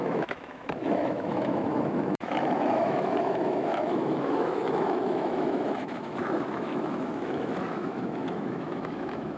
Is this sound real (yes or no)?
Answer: no